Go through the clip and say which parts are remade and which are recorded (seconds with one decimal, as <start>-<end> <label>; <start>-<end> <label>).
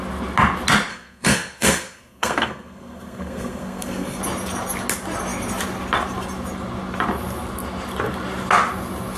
0.0-0.9 recorded; 0.9-4.2 remade; 4.2-9.2 recorded